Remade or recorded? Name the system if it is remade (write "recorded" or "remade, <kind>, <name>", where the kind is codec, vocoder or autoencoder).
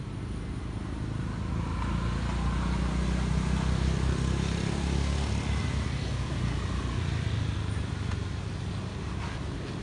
recorded